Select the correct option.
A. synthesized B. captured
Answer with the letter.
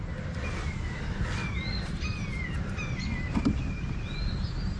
B